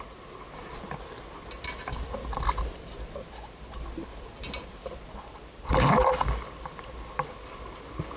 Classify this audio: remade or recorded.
recorded